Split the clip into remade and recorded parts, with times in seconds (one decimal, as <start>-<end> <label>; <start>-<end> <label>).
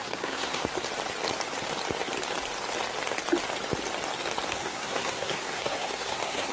0.0-0.6 remade; 0.6-4.5 recorded; 4.5-6.5 remade